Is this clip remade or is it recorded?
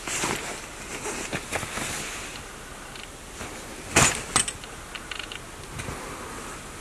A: recorded